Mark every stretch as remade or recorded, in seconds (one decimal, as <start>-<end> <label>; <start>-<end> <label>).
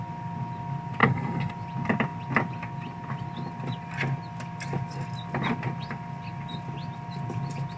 0.0-1.0 recorded; 1.0-1.5 remade; 1.5-7.8 recorded